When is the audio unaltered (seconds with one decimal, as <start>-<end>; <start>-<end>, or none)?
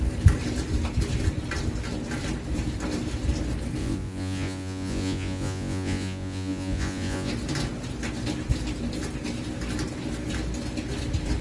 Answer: 0.0-3.8; 7.3-11.4